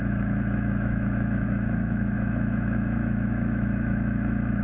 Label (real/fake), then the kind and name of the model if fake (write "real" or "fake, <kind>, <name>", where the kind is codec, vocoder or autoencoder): fake, autoencoder, DAC-VAE